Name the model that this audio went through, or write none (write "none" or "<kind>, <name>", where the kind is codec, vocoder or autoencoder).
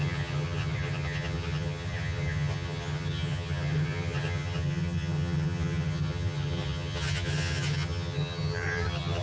vocoder, HiFi-GAN